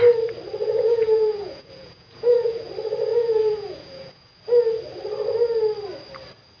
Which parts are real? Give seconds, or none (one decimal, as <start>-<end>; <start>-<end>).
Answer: 0.0-0.6; 2.7-3.1; 4.4-6.6